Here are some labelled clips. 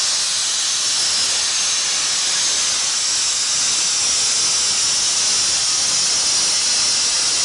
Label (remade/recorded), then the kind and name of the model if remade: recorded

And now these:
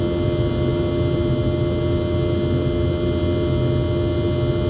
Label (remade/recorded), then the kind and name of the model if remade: recorded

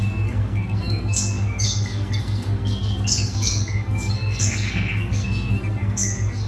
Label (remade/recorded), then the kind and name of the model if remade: remade, codec, SNAC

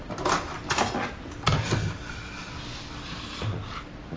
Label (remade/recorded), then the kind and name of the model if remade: recorded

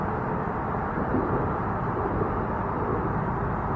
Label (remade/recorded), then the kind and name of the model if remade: recorded